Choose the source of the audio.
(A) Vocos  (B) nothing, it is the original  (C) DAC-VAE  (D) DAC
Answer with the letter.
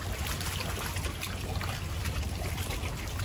B